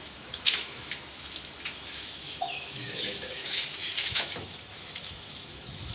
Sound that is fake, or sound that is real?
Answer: fake